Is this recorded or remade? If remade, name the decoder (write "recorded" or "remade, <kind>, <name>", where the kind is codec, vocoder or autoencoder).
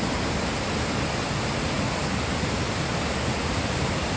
recorded